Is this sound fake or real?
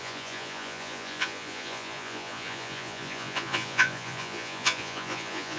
fake